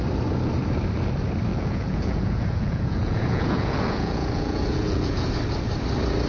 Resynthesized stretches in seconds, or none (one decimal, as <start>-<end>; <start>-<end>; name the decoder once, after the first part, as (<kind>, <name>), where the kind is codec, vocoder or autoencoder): 1.5-5.3 (vocoder, Vocos)